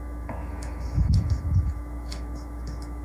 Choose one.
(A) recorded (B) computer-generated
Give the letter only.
B